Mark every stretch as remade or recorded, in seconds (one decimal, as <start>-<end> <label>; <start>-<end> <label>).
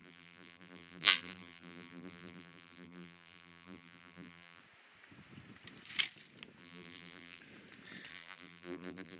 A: 0.0-4.6 remade; 4.6-6.6 recorded; 6.6-7.4 remade; 7.4-8.1 recorded; 8.1-9.2 remade